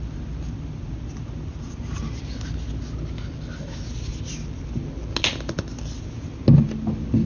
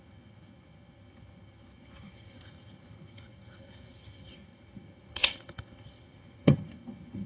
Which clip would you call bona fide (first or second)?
first